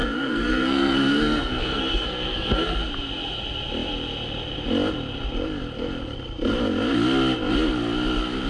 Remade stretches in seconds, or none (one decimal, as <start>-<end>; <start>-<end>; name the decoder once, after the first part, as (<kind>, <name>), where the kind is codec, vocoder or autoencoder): 0.0-2.8 (codec, SNAC)